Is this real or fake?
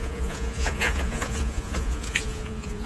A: fake